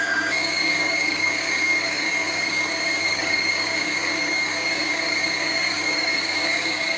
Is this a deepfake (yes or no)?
yes